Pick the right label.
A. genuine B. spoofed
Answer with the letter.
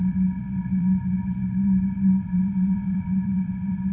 B